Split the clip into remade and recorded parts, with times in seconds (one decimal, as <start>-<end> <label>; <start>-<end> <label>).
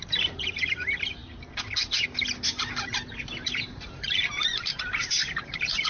0.0-1.2 remade; 1.2-2.8 recorded; 2.8-5.9 remade